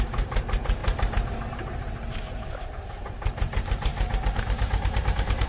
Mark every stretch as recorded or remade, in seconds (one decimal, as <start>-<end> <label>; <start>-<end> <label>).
0.0-0.8 remade; 0.8-1.5 recorded; 1.5-5.5 remade